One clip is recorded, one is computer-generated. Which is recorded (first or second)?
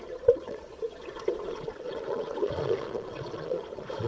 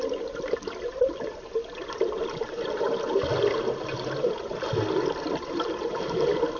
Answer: second